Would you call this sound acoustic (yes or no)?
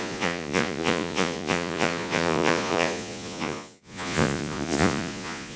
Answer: no